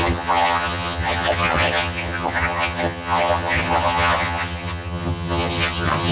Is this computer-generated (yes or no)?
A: yes